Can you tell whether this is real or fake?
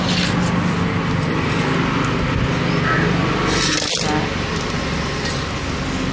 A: real